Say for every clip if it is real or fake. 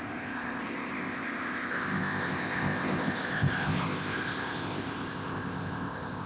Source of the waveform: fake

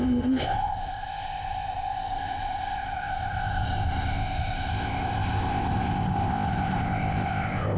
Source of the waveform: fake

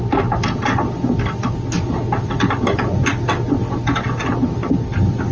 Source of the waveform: real